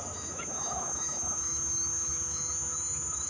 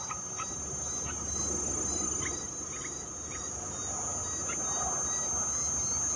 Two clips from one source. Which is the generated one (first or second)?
first